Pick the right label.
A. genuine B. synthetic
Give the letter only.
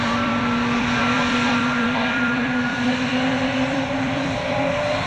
B